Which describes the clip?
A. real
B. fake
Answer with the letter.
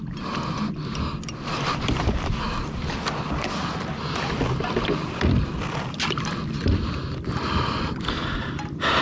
A